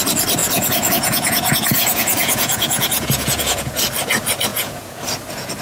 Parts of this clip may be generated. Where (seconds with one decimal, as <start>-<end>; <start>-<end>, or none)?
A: 0.4-3.8; 4.5-5.0